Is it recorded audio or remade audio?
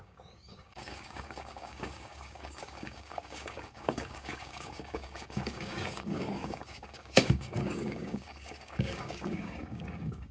remade